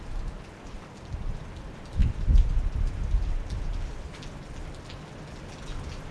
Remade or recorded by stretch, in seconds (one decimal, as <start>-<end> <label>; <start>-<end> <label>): 0.0-6.1 recorded